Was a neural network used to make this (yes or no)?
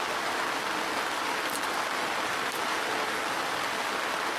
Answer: no